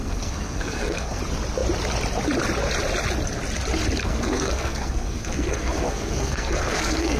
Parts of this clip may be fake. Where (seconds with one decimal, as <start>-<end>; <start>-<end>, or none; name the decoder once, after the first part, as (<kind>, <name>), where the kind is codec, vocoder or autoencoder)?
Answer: 0.0-1.2 (codec, SNAC); 4.0-7.2